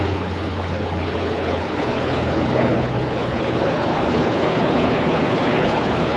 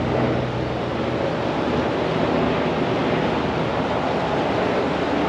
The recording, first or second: second